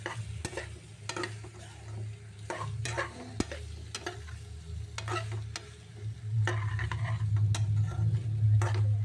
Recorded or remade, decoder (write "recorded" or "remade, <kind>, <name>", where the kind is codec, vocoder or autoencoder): recorded